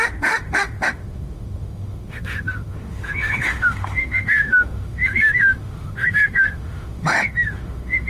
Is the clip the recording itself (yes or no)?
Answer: no